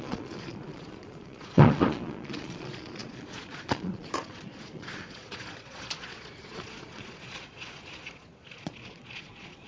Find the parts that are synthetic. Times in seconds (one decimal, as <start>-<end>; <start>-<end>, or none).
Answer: 0.0-9.7